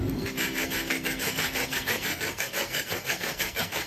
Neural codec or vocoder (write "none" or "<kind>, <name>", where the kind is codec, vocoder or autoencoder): codec, SNAC